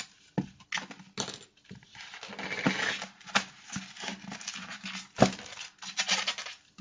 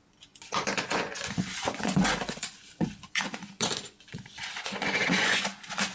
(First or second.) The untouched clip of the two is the first